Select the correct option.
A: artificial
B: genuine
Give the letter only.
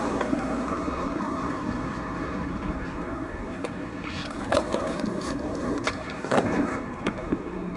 A